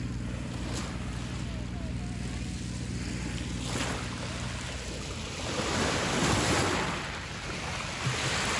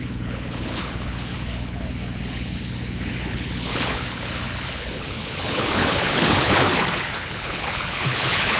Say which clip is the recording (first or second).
first